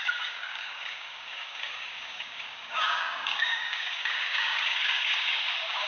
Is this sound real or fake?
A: fake